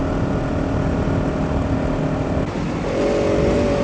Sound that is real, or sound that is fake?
real